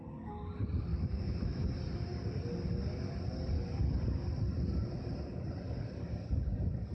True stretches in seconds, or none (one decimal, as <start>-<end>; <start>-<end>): 0.0-0.9; 1.7-6.9